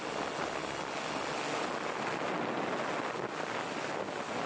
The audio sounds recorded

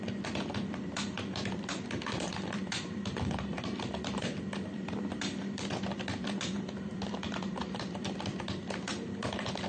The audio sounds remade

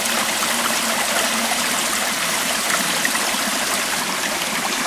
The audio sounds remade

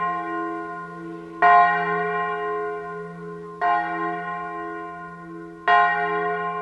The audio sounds recorded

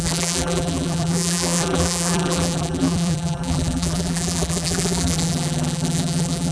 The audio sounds remade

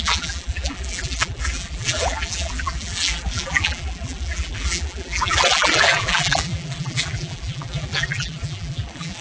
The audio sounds remade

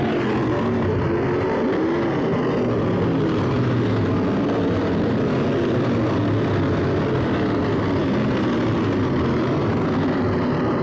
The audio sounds recorded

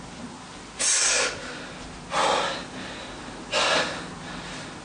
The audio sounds recorded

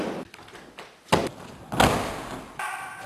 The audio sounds recorded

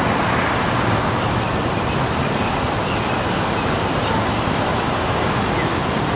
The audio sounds recorded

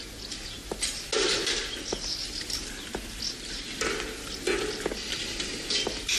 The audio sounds recorded